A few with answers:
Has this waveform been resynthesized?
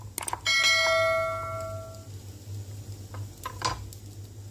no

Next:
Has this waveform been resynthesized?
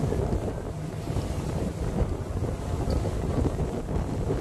no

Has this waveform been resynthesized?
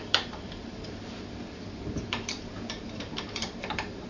yes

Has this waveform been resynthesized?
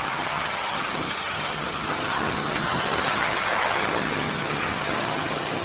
yes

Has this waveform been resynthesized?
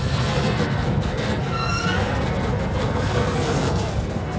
yes